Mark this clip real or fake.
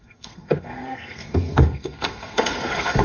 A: fake